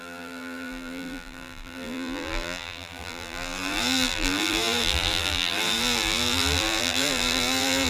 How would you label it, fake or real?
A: fake